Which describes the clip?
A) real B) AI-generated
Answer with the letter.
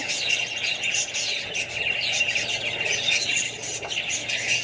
A